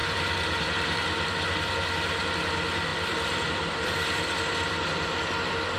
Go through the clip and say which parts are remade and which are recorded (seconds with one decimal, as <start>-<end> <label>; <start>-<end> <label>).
0.0-1.7 remade; 1.7-2.9 recorded; 2.9-5.3 remade; 5.3-5.8 recorded